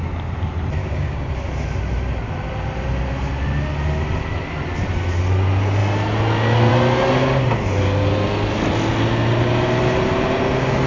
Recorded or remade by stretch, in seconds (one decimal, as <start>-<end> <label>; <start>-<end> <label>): 0.0-0.8 recorded; 0.8-1.3 remade; 1.3-10.9 recorded

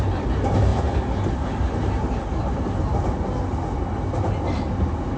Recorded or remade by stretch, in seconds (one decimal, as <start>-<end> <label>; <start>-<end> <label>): 0.0-5.2 recorded

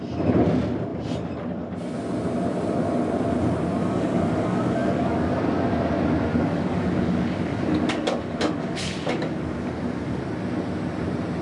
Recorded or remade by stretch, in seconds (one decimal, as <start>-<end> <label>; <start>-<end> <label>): 0.0-3.8 recorded; 3.8-5.4 remade; 5.4-6.3 recorded; 6.3-10.2 remade; 10.2-11.4 recorded

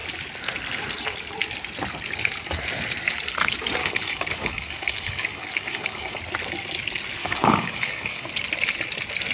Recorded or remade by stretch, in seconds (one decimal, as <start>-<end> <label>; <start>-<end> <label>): 0.0-3.8 recorded; 3.8-6.2 remade; 6.2-7.2 recorded; 7.2-8.3 remade; 8.3-9.3 recorded